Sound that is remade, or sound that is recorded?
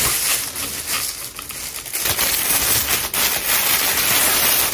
recorded